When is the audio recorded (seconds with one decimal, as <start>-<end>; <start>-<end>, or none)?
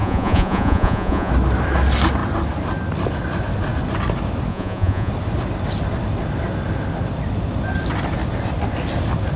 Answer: 1.3-4.5; 5.1-9.4